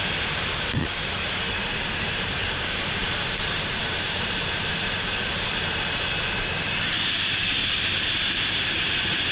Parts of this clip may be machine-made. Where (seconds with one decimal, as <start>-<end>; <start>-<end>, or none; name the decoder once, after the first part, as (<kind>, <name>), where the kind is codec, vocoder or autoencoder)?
0.0-9.3 (vocoder, BigVGAN v2)